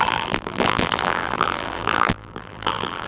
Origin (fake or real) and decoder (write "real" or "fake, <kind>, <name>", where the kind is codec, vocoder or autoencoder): fake, vocoder, BigVGAN v2